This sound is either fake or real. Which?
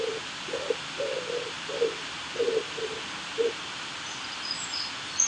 real